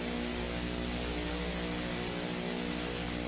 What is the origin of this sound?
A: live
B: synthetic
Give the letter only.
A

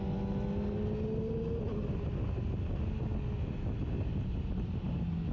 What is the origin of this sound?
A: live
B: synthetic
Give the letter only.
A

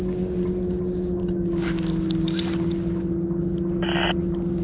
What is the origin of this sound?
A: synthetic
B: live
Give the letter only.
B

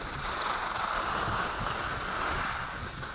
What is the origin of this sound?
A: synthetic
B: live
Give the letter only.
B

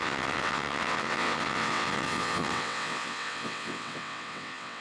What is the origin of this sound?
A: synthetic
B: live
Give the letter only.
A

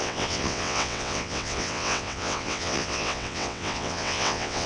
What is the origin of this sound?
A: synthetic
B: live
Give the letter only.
A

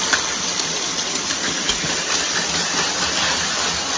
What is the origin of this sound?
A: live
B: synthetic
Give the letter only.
A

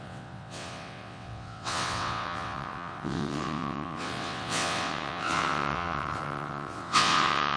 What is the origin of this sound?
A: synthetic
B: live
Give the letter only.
A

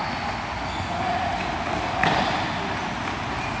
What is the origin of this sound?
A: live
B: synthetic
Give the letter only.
A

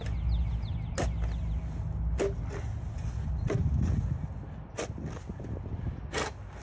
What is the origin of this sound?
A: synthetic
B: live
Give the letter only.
B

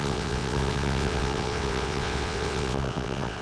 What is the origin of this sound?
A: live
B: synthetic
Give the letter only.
B